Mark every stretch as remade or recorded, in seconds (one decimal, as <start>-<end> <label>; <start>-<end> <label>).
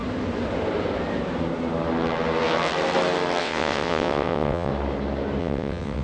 0.0-3.4 recorded; 3.4-4.7 remade; 4.7-5.4 recorded; 5.4-6.0 remade